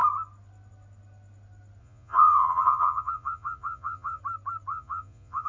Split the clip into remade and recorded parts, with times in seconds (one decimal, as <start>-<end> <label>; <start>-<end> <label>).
0.0-1.8 recorded; 1.8-4.2 remade; 4.2-4.7 recorded; 4.7-5.5 remade